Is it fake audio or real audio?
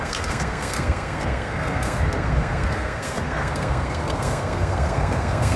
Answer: fake